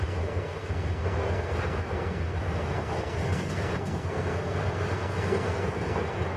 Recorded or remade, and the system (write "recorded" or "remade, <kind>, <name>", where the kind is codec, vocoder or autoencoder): remade, codec, SNAC